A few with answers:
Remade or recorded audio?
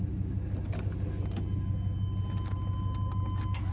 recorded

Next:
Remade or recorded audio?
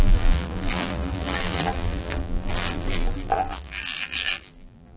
remade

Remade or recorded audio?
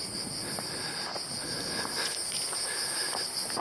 recorded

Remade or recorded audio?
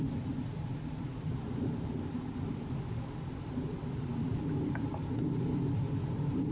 recorded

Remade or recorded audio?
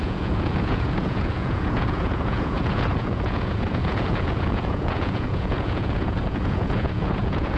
remade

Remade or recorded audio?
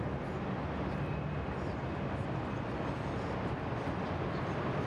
recorded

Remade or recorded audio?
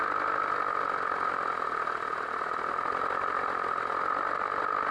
recorded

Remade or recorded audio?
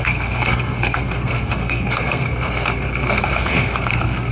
remade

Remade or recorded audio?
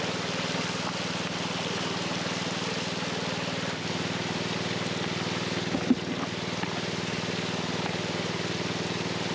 recorded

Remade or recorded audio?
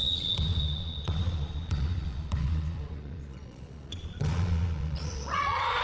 remade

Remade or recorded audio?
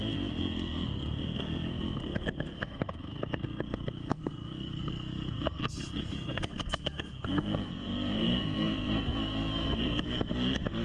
remade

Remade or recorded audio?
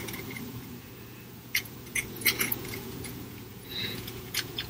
remade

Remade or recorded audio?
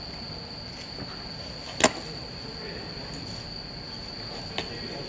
recorded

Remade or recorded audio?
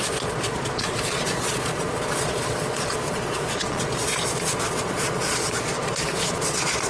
remade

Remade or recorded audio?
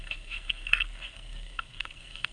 remade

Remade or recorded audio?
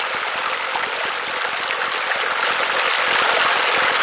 recorded